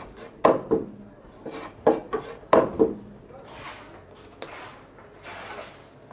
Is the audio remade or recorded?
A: recorded